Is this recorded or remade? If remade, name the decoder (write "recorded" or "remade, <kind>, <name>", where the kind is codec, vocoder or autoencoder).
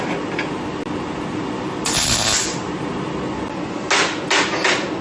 recorded